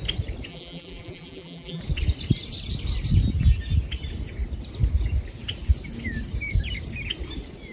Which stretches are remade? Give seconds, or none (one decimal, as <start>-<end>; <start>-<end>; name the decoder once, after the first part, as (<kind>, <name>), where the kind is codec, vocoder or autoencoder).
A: 0.5-1.8 (vocoder, BigVGAN v2)